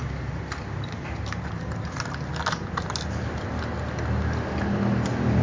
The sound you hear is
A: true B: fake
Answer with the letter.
A